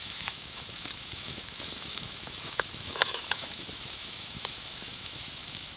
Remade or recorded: remade